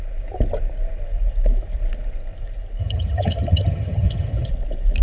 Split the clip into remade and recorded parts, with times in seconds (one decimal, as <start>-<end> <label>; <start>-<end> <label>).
0.0-2.8 recorded; 2.8-4.5 remade; 4.5-5.0 recorded